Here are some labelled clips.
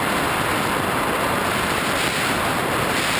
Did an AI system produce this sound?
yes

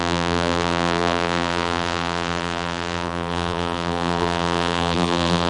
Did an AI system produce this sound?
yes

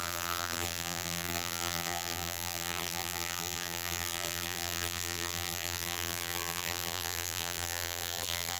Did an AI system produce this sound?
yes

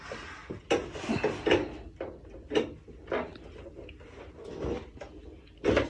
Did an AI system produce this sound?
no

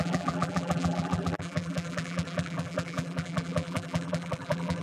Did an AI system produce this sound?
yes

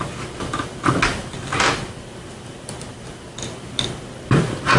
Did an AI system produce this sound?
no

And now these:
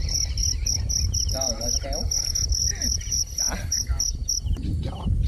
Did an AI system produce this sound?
yes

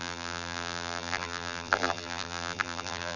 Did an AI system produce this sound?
yes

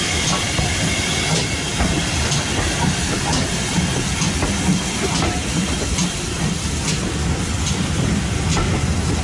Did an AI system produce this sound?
yes